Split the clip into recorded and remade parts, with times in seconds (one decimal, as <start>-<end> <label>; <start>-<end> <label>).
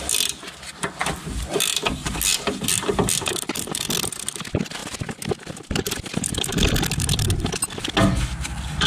0.0-1.0 recorded; 1.0-1.6 remade; 1.6-8.9 recorded